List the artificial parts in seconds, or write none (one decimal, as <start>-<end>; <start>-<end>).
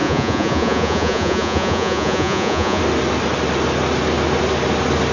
0.0-2.8